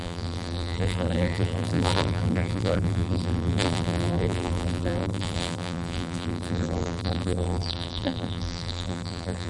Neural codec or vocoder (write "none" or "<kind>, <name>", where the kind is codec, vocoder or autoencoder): vocoder, BigVGAN v2